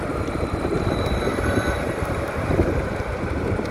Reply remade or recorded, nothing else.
remade